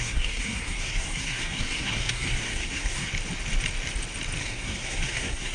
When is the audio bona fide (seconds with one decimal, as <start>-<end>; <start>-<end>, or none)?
3.1-4.4